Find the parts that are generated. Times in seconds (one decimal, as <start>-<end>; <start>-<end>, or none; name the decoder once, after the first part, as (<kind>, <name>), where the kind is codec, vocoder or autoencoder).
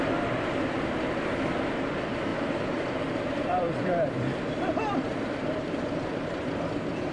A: 2.3-6.6 (vocoder, BigVGAN v2)